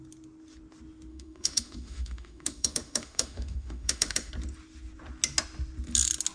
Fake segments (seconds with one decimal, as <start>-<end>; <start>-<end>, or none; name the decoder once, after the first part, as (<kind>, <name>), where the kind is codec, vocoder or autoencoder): 1.1-4.3 (autoencoder, DAC-VAE)